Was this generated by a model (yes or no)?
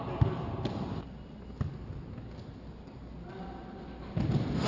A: no